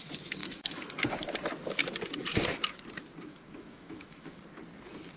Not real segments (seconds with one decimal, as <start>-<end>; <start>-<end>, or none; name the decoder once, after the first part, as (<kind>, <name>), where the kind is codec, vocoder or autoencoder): 0.4-0.9 (autoencoder, DAC-VAE); 3.3-4.4